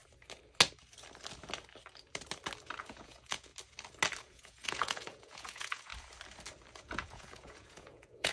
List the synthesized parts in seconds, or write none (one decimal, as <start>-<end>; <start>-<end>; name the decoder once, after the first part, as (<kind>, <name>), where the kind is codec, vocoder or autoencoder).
2.8-3.5 (vocoder, Vocos); 4.2-5.9; 6.8-8.3